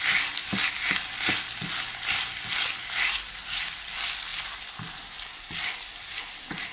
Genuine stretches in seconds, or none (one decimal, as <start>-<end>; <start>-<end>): 0.0-6.7